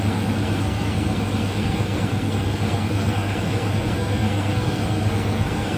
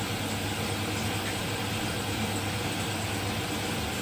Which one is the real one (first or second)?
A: second